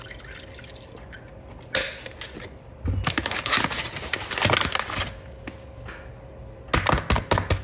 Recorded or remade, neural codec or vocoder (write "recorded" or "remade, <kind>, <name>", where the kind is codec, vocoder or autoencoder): recorded